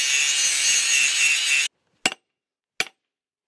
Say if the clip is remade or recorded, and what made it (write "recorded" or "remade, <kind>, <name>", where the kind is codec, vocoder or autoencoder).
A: recorded